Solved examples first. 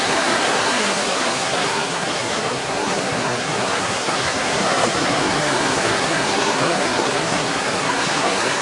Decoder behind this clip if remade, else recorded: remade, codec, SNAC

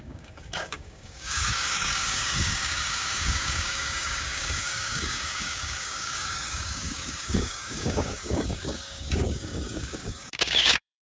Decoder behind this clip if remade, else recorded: remade, codec, DAC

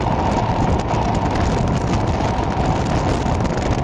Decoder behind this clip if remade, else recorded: recorded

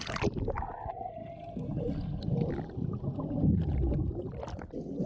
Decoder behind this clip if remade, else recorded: recorded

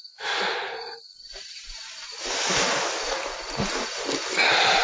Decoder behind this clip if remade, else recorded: recorded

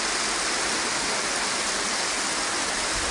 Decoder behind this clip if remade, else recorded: recorded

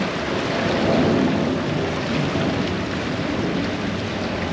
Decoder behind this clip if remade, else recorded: recorded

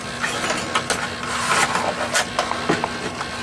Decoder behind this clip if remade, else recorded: recorded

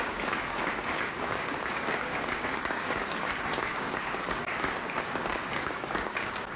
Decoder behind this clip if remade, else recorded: remade, codec, DAC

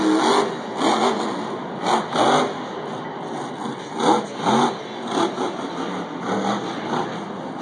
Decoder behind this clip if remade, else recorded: recorded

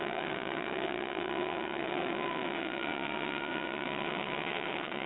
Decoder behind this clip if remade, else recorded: remade, vocoder, WaveNeXt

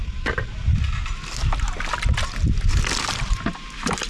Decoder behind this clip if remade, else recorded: recorded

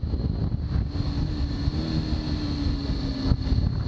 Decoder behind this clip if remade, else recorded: recorded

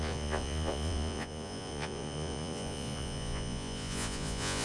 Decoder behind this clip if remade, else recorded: remade, vocoder, Vocos